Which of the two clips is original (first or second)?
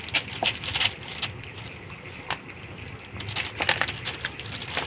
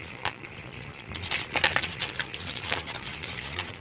first